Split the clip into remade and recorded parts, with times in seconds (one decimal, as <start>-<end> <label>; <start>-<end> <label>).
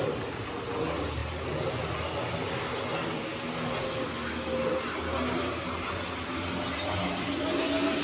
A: 0.0-8.0 recorded